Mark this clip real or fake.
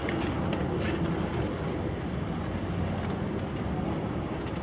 real